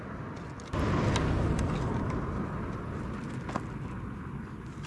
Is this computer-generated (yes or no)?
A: no